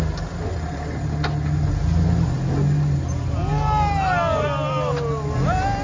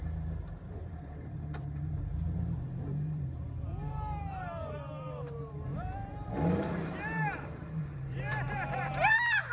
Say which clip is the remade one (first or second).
second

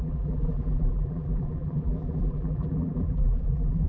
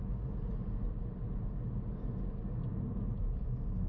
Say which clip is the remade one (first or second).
first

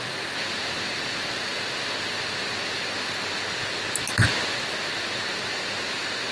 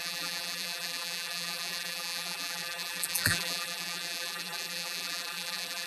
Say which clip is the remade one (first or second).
second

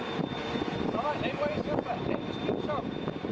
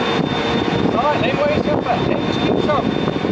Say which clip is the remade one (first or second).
first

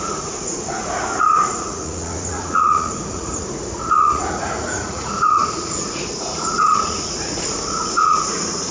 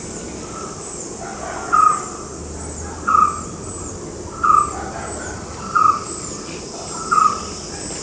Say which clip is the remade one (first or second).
first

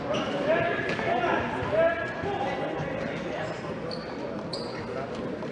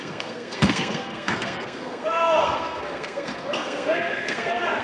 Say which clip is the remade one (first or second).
second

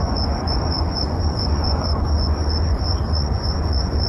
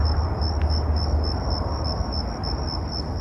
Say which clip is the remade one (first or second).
first